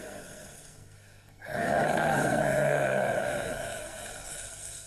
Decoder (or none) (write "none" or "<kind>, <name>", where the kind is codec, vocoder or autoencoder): codec, SNAC